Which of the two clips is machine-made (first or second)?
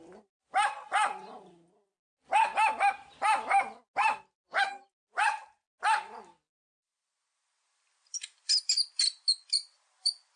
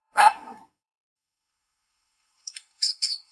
second